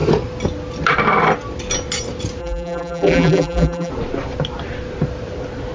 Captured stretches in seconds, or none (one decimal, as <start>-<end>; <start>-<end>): 0.0-2.4; 3.9-5.7